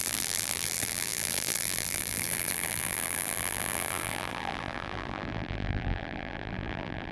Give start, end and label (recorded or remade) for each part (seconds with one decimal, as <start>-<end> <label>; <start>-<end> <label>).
0.0-7.1 remade